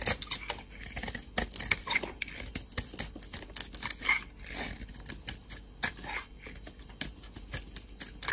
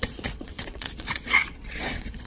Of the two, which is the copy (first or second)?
second